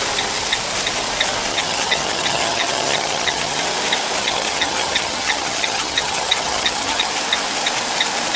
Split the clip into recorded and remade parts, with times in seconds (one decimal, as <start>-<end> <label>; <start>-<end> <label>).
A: 0.0-1.5 recorded; 1.5-3.6 remade; 3.6-4.2 recorded; 4.2-7.1 remade; 7.1-8.4 recorded